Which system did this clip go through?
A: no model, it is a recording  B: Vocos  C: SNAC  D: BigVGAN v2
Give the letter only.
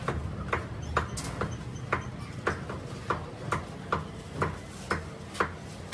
A